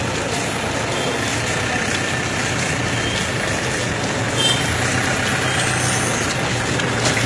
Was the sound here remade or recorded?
recorded